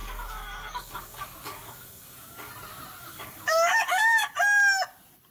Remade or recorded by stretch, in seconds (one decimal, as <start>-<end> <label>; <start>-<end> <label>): 0.0-2.5 remade; 2.5-3.0 recorded; 3.0-4.3 remade; 4.3-5.3 recorded